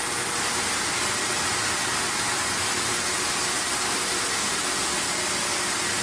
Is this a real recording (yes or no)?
yes